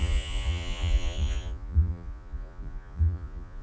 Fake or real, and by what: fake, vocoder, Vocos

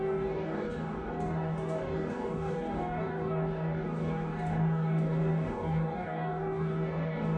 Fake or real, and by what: fake, codec, DAC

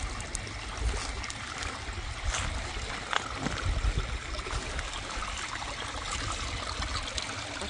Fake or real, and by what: real